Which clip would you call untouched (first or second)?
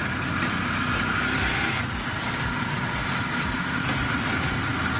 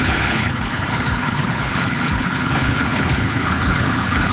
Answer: first